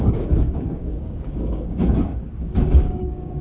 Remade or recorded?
remade